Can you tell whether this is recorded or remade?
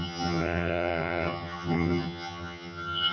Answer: remade